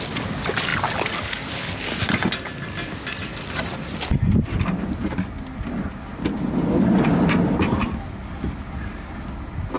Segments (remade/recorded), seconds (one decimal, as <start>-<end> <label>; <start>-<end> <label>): 0.0-9.8 recorded